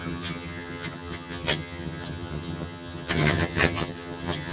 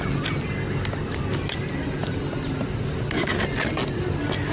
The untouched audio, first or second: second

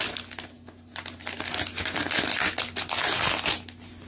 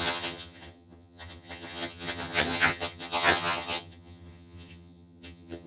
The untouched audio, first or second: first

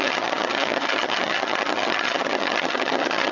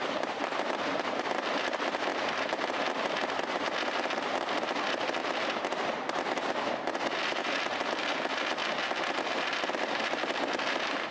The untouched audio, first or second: second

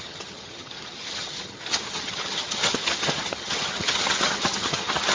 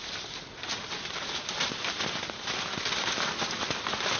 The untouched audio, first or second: second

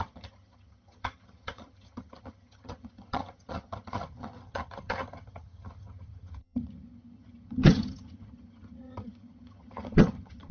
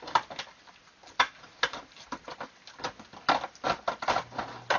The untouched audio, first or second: second